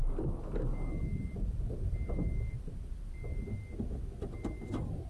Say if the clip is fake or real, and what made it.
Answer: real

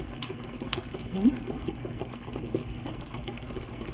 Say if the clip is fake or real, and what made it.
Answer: fake, codec, SNAC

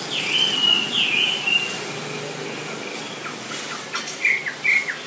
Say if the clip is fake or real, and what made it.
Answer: real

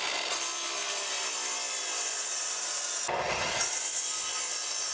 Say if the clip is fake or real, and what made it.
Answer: real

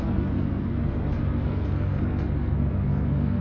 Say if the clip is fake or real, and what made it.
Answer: fake, codec, SNAC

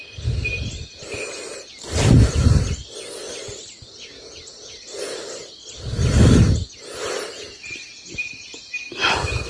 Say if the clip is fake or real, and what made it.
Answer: real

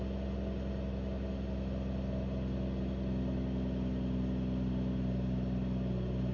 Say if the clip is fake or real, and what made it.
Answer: real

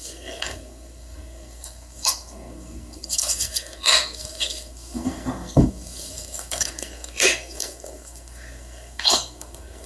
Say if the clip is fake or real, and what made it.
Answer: fake, codec, SNAC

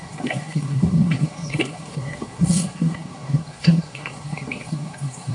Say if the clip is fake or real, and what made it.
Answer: fake, codec, SNAC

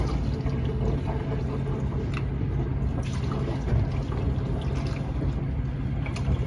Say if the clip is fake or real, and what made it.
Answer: real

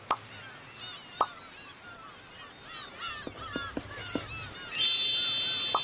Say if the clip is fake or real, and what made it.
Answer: real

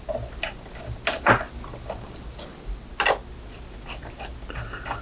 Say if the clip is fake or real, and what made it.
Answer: real